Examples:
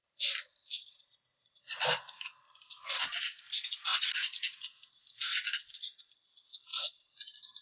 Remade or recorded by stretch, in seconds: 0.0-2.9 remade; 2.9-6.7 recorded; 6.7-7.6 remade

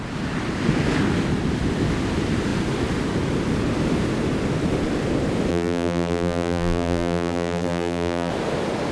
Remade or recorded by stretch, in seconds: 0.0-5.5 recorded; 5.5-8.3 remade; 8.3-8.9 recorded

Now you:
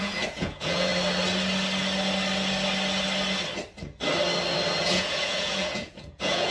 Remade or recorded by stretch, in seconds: 0.0-0.9 remade; 0.9-4.8 recorded; 4.8-6.5 remade

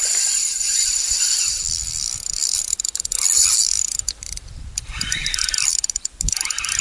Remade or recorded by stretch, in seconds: 0.0-6.8 remade